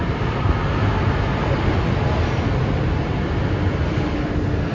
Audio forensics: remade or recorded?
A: recorded